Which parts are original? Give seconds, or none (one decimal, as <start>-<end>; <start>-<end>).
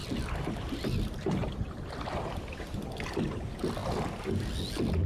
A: 1.0-1.4; 2.6-5.1